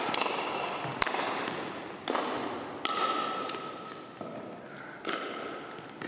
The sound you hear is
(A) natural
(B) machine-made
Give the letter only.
A